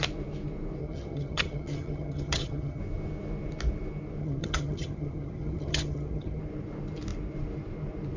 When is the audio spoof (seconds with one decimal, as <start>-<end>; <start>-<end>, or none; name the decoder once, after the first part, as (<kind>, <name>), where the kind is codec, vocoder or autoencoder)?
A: 0.8-2.8 (vocoder, HiFi-GAN); 4.2-6.4